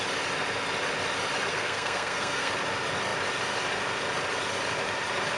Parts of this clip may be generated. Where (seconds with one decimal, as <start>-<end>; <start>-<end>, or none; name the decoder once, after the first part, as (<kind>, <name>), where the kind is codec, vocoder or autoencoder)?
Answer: 1.5-2.5 (codec, SNAC)